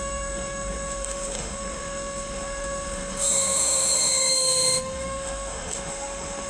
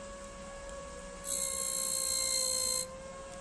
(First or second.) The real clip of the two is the second